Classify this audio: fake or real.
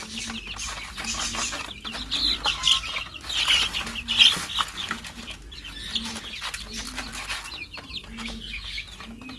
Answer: real